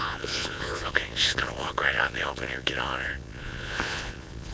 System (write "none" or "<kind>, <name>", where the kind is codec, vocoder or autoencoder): vocoder, Vocos